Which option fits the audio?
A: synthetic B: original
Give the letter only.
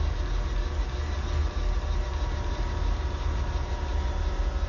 B